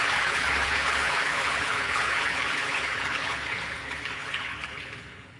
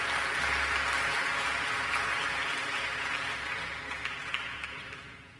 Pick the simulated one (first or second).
first